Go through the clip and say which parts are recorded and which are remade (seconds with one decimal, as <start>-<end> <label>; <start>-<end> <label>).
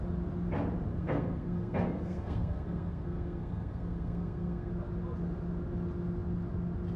0.0-0.9 recorded; 0.9-4.7 remade; 4.7-7.0 recorded